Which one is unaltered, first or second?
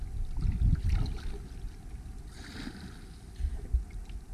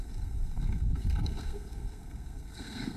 first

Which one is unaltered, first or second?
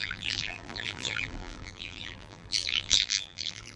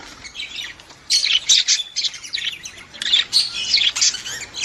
second